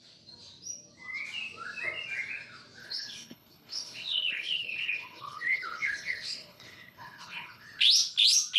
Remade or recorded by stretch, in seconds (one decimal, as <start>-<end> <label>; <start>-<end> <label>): 0.0-2.8 recorded; 2.8-7.8 remade; 7.8-8.6 recorded